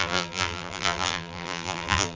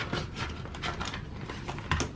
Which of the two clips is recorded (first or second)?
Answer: second